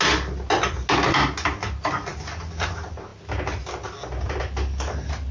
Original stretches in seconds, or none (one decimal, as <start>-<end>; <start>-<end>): 0.0-5.3